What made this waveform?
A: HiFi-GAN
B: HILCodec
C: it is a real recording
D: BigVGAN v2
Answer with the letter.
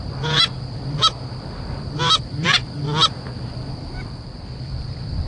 D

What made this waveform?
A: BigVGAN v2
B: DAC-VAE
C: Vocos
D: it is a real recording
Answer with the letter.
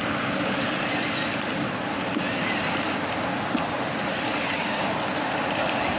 D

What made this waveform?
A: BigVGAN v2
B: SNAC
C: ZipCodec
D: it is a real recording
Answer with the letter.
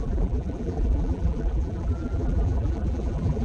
A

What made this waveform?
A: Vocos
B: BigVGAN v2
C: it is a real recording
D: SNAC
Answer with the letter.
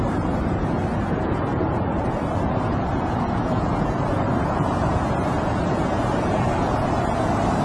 B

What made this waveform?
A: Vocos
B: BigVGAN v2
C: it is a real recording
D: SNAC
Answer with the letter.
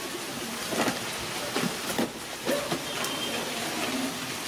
C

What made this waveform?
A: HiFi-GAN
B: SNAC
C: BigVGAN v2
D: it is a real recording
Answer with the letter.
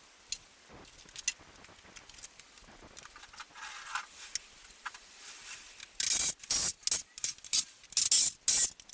D